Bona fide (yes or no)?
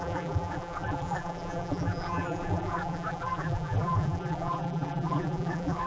no